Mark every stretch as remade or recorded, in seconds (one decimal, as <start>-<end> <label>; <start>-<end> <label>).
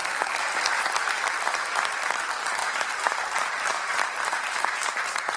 0.0-2.6 recorded; 2.6-5.4 remade